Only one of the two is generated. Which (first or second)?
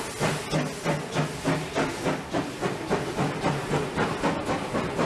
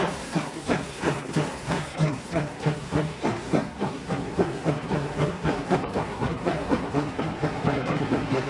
second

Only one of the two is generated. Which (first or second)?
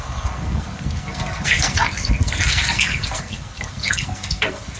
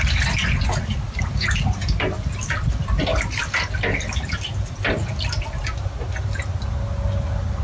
first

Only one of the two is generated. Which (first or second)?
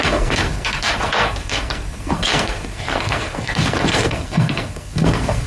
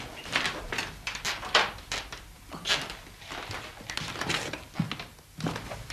first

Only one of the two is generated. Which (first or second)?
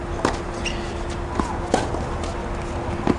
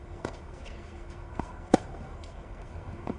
second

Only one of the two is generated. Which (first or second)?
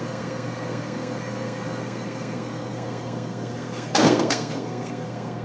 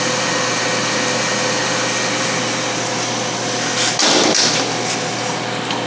first